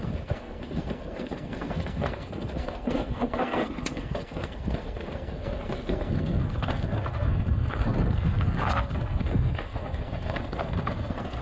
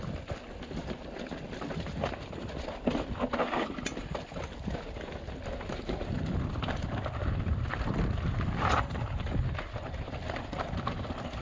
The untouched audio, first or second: second